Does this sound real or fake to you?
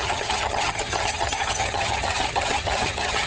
fake